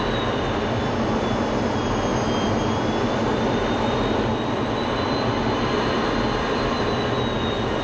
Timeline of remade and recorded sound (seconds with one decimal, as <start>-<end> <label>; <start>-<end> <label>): 0.0-7.8 recorded